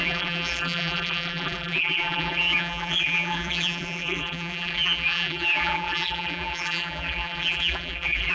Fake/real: fake